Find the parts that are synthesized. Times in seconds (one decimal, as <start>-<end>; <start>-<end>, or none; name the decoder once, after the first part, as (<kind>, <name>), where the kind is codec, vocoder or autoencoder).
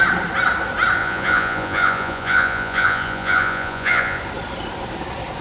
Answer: 1.0-4.2 (vocoder, Vocos)